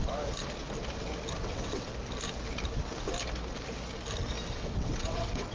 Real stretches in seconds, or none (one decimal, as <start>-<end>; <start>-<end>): 0.0-1.4; 1.9-4.5